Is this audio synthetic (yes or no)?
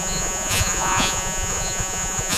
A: yes